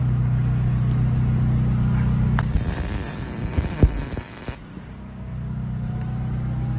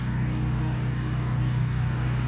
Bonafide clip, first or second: first